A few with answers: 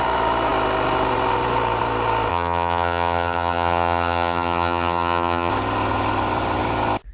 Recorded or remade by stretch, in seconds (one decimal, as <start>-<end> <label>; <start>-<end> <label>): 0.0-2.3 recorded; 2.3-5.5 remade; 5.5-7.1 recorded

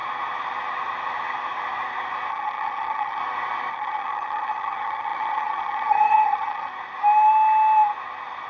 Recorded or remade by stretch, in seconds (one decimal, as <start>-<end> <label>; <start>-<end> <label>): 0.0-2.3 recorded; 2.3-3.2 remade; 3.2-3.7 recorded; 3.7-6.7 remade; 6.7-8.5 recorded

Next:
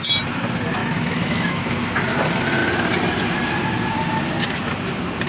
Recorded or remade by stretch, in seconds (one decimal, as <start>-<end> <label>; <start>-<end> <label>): 0.0-0.8 recorded; 0.8-1.7 remade; 1.7-5.3 recorded